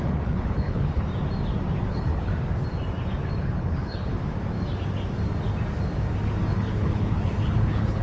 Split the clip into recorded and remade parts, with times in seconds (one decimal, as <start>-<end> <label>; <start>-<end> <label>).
0.0-1.1 remade; 1.1-1.9 recorded; 1.9-2.3 remade; 2.3-3.4 recorded; 3.4-4.1 remade; 4.1-6.5 recorded; 6.5-8.0 remade